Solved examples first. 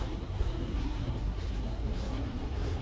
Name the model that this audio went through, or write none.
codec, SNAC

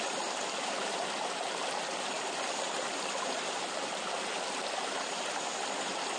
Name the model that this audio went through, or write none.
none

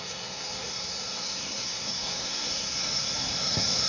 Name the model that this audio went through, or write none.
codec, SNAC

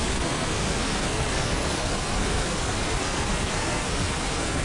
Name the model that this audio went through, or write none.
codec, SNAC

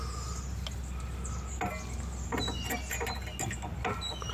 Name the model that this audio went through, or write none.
none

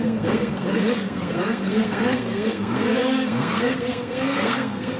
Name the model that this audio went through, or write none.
codec, SNAC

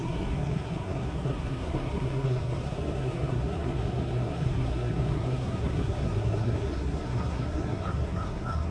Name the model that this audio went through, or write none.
codec, SNAC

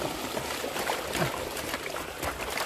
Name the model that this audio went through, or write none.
none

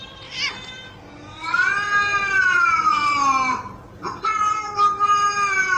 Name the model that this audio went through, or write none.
none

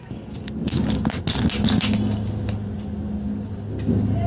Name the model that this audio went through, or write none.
none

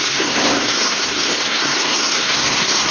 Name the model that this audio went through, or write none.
codec, SNAC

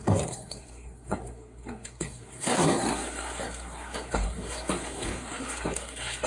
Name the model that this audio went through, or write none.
codec, SNAC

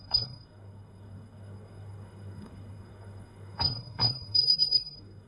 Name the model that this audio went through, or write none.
codec, SNAC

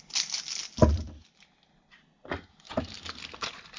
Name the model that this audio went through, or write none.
none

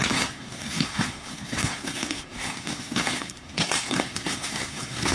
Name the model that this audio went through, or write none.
codec, SNAC